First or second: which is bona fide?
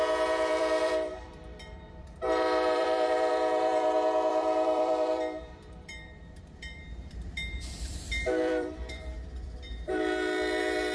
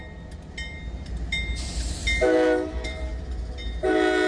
second